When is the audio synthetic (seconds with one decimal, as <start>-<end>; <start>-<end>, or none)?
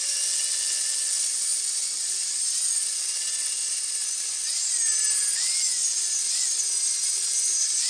none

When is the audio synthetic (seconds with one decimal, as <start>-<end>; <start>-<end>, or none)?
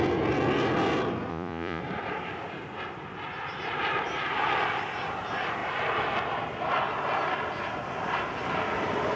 1.3-1.8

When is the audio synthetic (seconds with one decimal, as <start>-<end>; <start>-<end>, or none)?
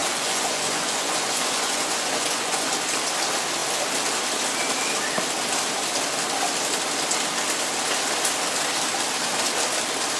0.0-2.7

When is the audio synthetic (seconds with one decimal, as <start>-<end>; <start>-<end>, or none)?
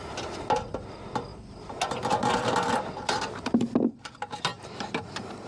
none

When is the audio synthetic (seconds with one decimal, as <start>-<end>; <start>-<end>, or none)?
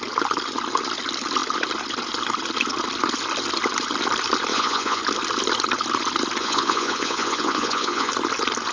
4.5-5.0; 6.4-8.1